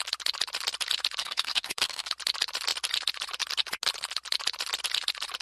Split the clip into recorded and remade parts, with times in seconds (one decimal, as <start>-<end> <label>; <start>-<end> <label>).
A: 0.0-1.2 recorded; 1.2-2.1 remade; 2.1-5.4 recorded